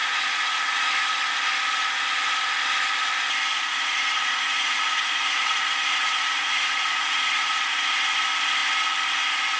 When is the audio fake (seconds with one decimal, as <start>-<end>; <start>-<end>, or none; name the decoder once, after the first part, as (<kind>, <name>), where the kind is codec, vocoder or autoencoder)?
0.0-0.9 (vocoder, Vocos); 3.5-7.9